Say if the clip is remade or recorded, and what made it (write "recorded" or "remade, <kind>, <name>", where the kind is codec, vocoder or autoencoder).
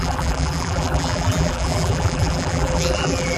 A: remade, vocoder, BigVGAN v2